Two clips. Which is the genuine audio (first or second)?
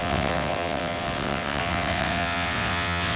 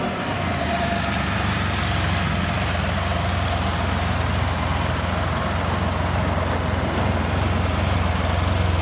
second